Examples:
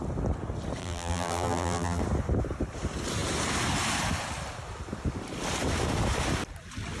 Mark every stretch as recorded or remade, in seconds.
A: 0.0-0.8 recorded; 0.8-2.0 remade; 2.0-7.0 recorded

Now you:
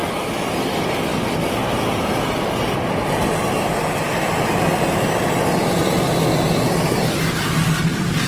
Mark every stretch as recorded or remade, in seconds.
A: 0.0-0.6 remade; 0.6-8.3 recorded